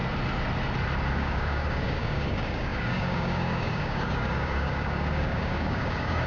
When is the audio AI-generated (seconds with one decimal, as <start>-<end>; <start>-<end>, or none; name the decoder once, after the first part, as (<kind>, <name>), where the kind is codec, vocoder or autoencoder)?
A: 1.1-6.3 (codec, DAC)